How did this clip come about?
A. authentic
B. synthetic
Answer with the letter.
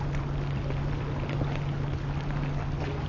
A